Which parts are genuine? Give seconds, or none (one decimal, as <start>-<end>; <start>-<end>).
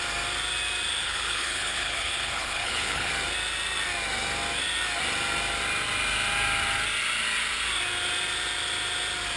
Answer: 0.0-1.0; 3.1-9.4